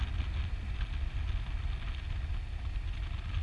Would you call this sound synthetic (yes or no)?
no